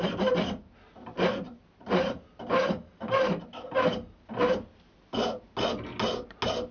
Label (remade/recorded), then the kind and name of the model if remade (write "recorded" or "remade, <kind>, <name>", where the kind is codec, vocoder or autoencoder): recorded